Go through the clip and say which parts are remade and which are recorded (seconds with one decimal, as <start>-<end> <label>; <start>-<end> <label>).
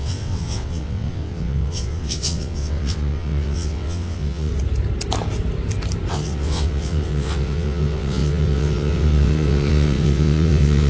0.0-4.5 remade; 4.5-6.1 recorded; 6.1-10.9 remade